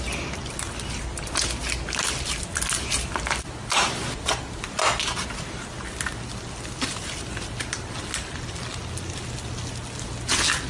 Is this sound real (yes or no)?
yes